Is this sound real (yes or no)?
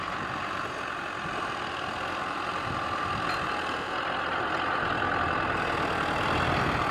yes